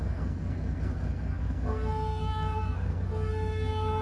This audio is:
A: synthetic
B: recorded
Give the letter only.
A